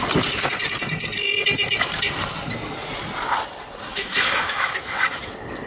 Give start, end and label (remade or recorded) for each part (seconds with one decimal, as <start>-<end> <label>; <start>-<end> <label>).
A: 0.0-3.9 recorded; 3.9-5.3 remade; 5.3-5.7 recorded